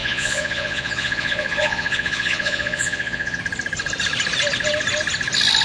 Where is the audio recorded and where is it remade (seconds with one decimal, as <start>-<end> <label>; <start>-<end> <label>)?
0.0-3.4 remade; 3.4-5.6 recorded